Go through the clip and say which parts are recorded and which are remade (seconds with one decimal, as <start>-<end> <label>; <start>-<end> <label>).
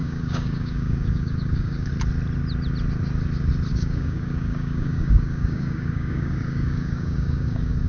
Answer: 0.0-1.9 remade; 1.9-3.7 recorded; 3.7-7.9 remade